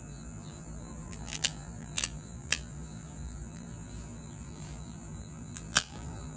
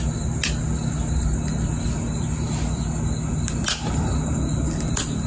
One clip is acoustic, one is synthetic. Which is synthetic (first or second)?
first